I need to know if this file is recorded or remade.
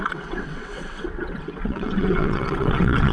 remade